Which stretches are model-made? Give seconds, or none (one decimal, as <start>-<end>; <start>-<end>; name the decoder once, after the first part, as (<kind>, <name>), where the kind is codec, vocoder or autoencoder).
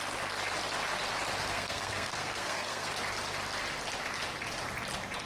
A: 1.5-2.9 (codec, SNAC)